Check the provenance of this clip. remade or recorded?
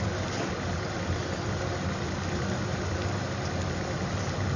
recorded